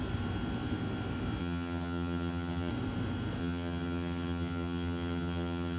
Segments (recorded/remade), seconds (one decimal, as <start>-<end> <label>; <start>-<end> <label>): 0.0-1.4 recorded; 1.4-2.7 remade; 2.7-3.4 recorded; 3.4-5.8 remade